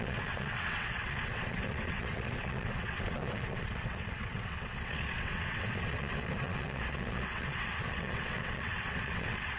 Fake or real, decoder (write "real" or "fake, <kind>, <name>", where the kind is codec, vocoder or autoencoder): fake, vocoder, WaveNeXt